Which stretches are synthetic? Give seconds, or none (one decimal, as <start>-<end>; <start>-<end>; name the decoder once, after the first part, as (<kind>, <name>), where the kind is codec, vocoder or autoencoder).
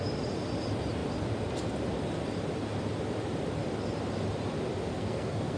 4.9-5.6 (codec, SNAC)